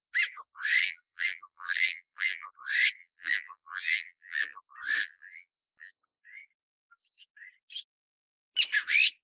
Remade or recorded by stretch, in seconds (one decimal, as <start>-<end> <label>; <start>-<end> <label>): 0.0-0.8 recorded; 0.8-2.5 remade; 2.5-3.0 recorded; 3.0-4.6 remade; 4.6-5.0 recorded; 5.0-5.9 remade; 5.9-9.2 recorded